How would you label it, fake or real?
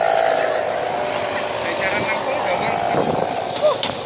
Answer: real